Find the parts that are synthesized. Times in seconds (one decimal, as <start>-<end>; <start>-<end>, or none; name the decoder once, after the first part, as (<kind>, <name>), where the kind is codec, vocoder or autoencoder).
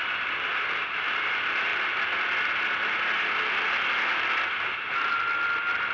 none